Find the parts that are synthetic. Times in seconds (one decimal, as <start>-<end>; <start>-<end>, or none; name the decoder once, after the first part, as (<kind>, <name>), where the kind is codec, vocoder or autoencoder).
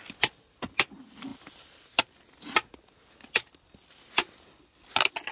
none